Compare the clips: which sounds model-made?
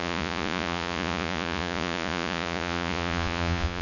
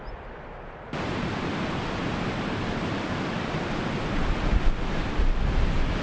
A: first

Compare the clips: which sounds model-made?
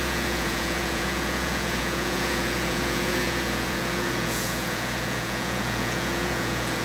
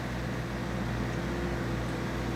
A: first